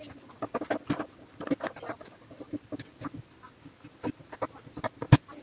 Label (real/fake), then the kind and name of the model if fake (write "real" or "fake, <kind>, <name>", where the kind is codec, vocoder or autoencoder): real